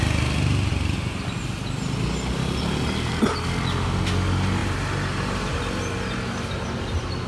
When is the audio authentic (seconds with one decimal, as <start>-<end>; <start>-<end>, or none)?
0.0-4.6; 5.6-7.3